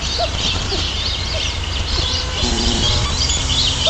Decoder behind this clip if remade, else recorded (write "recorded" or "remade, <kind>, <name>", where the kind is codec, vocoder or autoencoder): remade, vocoder, BigVGAN v2